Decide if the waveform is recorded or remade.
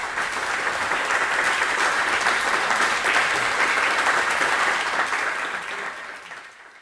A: remade